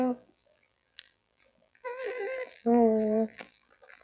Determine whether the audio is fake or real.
fake